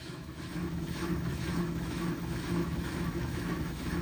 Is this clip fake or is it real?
fake